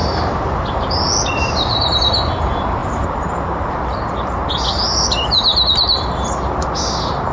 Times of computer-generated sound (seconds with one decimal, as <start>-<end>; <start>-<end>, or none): 0.0-0.9; 2.8-4.5; 5.5-6.3